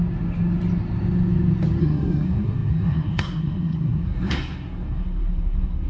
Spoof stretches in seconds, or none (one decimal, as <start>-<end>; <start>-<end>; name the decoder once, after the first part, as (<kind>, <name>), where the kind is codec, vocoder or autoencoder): 1.8-5.9 (codec, SNAC)